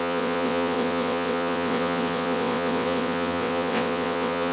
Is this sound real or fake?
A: fake